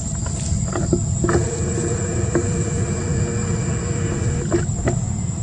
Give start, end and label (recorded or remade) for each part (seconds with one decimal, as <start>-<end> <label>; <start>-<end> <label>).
0.0-5.4 recorded